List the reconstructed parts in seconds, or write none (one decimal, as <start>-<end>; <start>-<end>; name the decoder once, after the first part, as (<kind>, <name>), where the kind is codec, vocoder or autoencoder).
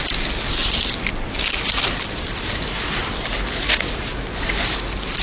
none